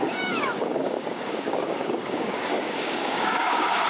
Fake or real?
fake